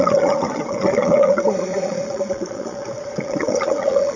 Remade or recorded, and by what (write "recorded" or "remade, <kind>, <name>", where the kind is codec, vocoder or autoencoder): remade, vocoder, Vocos